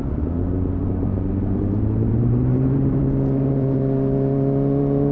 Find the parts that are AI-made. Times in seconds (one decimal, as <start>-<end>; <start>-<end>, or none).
0.8-3.0